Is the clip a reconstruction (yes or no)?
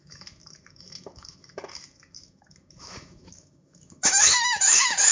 yes